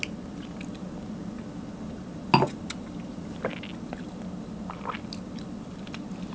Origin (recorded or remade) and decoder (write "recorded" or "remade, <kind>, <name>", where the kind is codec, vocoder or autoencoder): recorded